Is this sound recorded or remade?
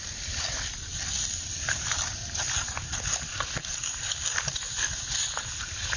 recorded